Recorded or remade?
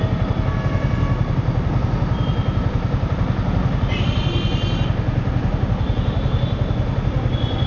recorded